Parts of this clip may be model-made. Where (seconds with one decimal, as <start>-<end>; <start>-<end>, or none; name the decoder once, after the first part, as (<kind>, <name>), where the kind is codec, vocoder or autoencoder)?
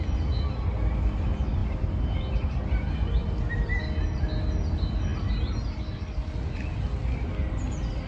none